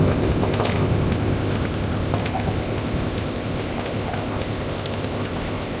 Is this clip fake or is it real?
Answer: fake